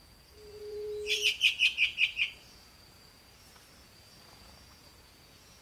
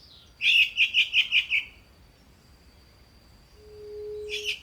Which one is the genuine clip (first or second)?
second